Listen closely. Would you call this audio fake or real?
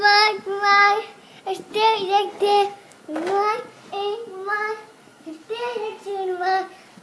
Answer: real